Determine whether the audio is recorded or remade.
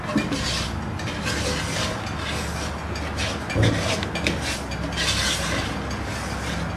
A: recorded